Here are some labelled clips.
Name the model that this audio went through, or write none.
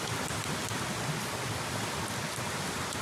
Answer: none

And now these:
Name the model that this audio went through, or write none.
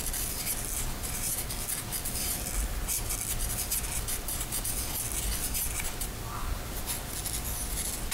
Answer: none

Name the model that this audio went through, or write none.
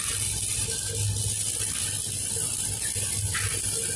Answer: none